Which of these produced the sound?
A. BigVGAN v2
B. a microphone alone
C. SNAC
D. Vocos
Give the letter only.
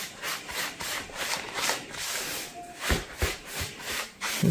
A